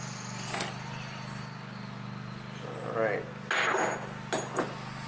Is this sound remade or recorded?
recorded